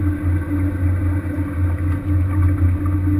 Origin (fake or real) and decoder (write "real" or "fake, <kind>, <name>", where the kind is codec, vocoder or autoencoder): real